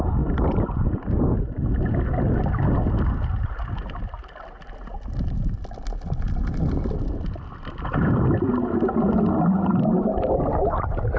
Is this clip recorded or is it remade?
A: recorded